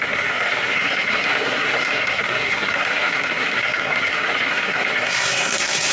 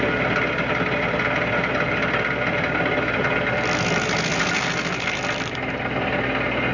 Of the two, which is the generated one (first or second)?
first